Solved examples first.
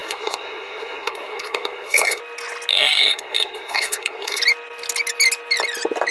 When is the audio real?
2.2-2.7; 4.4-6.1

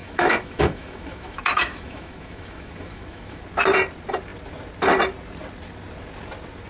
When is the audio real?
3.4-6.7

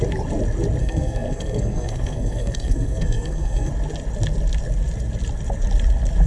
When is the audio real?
0.0-0.8; 3.7-6.3

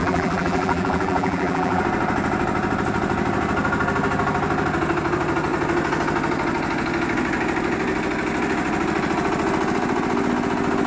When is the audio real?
1.8-10.9

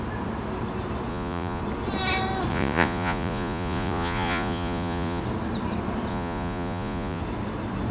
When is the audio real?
0.0-1.1; 1.6-2.5; 5.2-6.1; 7.2-7.9